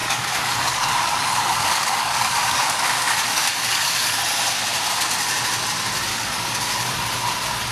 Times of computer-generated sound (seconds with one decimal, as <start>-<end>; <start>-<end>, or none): 0.0-4.2; 6.1-6.9

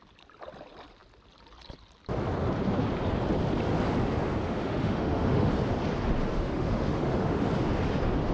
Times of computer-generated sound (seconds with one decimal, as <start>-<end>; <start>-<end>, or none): 4.4-5.5; 6.3-7.5